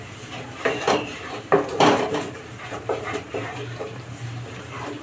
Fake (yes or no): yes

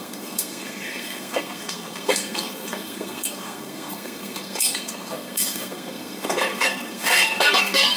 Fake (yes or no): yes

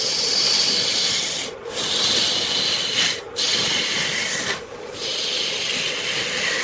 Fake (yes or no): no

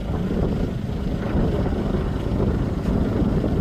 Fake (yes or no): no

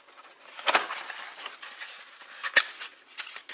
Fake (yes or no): no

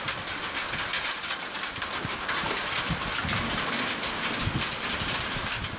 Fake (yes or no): no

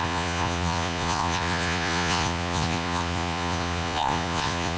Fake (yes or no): yes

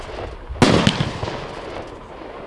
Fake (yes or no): no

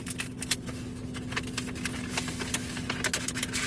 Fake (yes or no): no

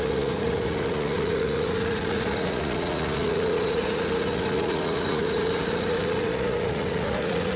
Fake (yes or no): yes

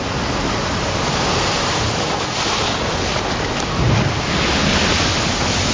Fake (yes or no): no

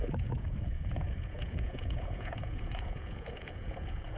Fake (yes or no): yes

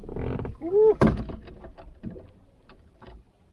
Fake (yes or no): no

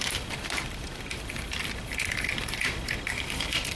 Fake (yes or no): yes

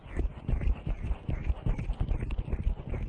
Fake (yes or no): no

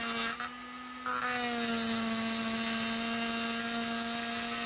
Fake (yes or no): no